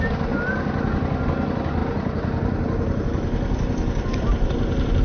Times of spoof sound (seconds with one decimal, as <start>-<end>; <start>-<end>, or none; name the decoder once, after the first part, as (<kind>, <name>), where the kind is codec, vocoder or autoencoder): none